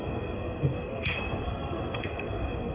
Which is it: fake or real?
fake